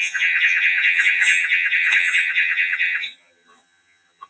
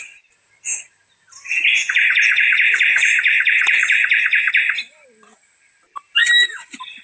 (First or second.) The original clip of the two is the second